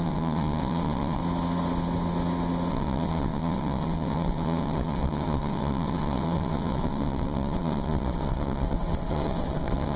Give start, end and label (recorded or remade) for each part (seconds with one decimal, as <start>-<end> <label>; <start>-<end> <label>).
0.0-1.2 remade; 1.2-2.7 recorded; 2.7-10.0 remade